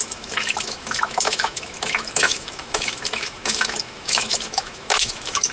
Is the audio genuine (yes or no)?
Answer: no